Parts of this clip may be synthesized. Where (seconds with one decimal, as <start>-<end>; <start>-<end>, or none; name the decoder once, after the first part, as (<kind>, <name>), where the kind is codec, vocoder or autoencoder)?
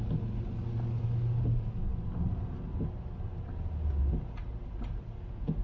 none